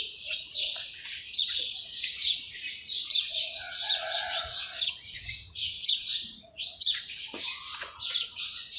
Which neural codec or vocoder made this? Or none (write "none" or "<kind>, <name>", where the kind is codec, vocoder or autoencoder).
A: vocoder, Vocos